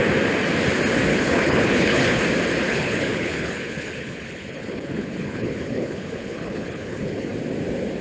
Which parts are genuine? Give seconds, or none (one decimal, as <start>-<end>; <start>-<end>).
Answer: 0.0-1.1; 2.2-2.7; 7.3-8.0